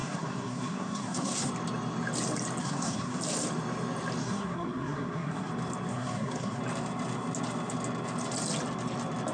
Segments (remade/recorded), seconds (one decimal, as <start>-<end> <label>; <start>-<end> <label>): 0.0-1.5 remade; 1.5-2.6 recorded; 2.6-3.2 remade; 3.2-4.2 recorded; 4.2-5.5 remade; 5.5-5.9 recorded; 5.9-6.6 remade; 6.6-9.3 recorded